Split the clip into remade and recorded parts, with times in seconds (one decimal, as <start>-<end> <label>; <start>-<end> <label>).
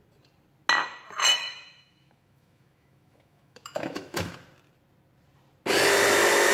0.0-1.4 recorded; 1.4-4.3 remade; 4.3-6.5 recorded